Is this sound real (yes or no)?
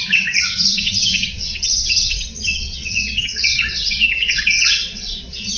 no